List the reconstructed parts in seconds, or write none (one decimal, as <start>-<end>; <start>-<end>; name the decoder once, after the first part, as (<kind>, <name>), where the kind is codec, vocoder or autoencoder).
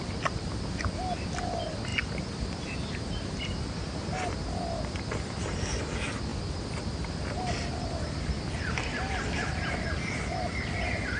0.0-1.9 (vocoder, BigVGAN v2); 5.8-6.3; 7.4-11.2